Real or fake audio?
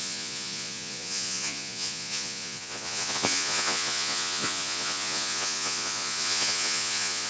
fake